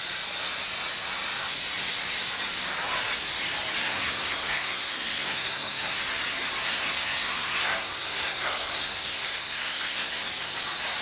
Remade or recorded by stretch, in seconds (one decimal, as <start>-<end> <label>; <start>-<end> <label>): 0.0-3.8 recorded; 3.8-6.0 remade; 6.0-6.6 recorded; 6.6-10.3 remade; 10.3-11.0 recorded